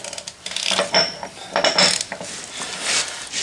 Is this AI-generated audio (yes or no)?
no